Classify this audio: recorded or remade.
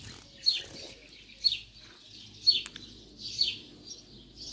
recorded